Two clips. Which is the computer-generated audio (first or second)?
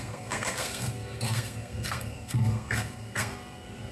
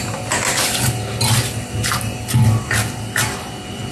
first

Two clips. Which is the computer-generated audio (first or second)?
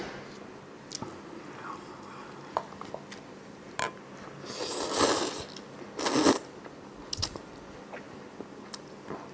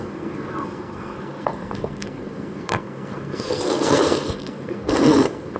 second